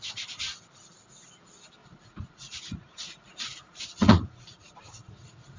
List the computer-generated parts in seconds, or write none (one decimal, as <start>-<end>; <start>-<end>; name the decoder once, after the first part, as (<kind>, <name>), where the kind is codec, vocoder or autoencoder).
1.8-5.6 (vocoder, Vocos)